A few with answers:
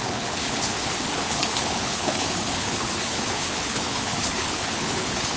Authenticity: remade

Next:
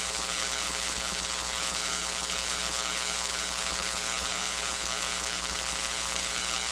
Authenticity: remade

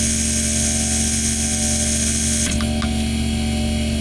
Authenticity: recorded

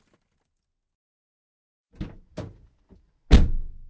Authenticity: recorded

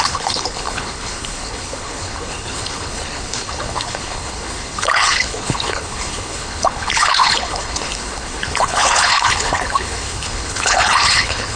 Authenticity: remade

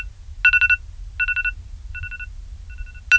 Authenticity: recorded